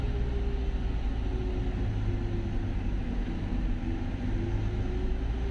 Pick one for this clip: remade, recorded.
recorded